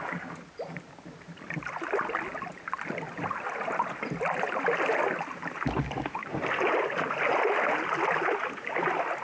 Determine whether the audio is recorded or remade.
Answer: recorded